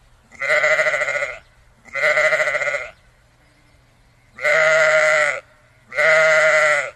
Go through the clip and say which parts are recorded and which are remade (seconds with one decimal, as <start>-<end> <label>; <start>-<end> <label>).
0.0-4.5 recorded; 4.5-5.4 remade; 5.4-7.0 recorded